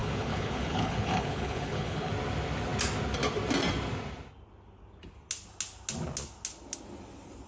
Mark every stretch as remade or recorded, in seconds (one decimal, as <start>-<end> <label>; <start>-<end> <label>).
0.0-2.1 remade; 2.1-7.5 recorded